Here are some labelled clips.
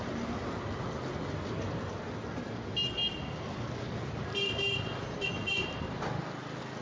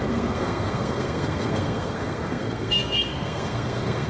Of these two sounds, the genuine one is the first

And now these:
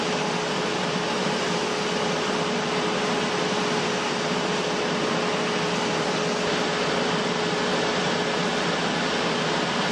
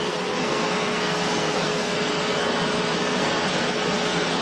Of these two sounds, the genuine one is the first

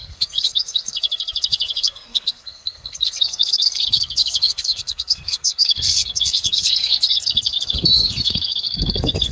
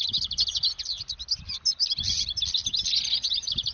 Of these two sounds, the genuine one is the second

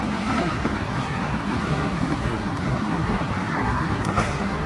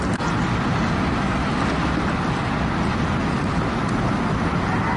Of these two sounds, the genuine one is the second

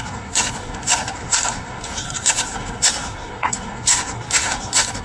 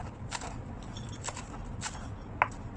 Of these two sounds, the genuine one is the second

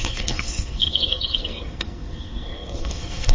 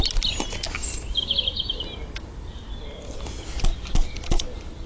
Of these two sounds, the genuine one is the second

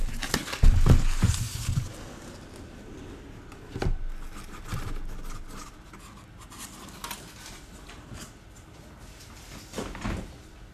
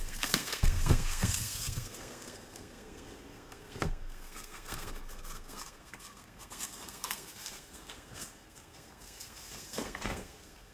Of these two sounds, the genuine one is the first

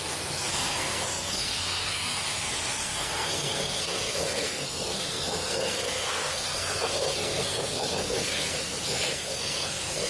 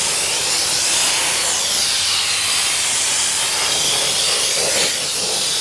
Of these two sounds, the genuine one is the second